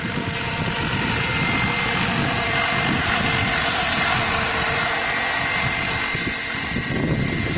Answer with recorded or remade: recorded